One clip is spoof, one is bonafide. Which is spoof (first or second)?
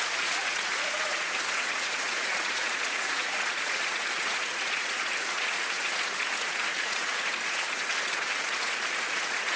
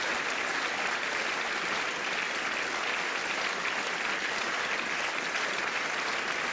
first